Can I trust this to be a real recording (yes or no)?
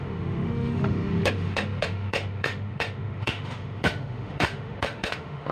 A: no